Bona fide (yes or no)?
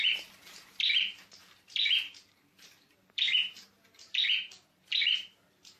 no